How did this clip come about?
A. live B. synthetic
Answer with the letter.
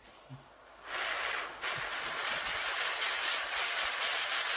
A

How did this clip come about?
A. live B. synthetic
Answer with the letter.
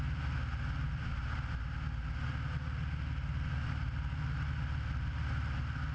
A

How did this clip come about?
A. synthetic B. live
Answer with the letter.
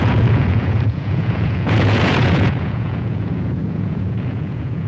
A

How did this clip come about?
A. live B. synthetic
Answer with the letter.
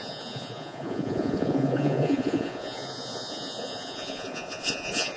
B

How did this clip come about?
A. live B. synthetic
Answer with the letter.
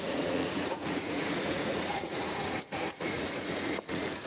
B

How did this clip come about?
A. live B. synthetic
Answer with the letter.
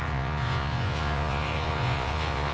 B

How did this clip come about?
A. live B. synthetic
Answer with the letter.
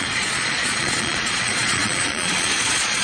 B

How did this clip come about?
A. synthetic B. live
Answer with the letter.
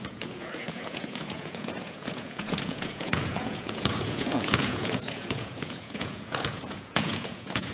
A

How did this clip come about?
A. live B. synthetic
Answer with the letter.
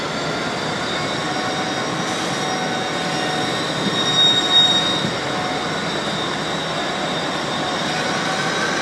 A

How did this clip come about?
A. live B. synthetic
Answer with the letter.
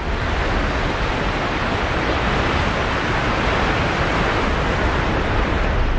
A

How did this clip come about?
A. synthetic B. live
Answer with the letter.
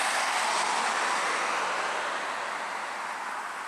B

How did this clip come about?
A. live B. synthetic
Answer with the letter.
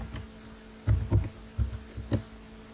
A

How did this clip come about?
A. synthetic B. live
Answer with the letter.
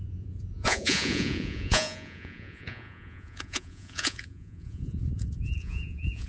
A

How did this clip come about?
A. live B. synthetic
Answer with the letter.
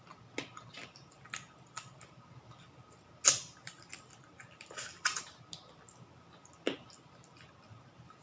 A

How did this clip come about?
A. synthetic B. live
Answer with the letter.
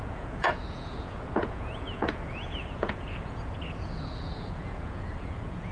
A